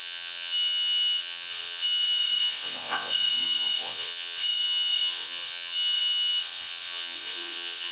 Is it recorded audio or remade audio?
remade